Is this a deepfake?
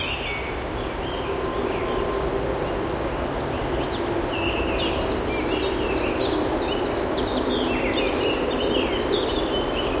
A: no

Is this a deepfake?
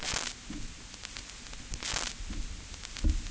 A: no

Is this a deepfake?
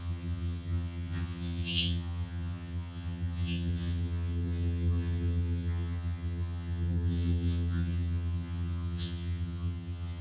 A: yes